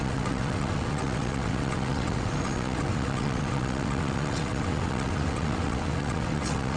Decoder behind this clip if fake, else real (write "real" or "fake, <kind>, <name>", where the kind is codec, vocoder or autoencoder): fake, vocoder, WaveNeXt